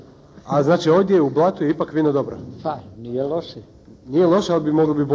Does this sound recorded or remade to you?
recorded